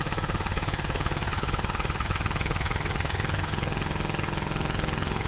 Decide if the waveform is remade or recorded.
remade